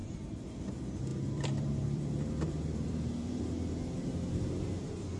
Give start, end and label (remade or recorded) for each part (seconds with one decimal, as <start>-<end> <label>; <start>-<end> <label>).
0.0-0.7 remade; 0.7-1.1 recorded; 1.1-3.4 remade; 3.4-4.1 recorded; 4.1-4.7 remade; 4.7-5.2 recorded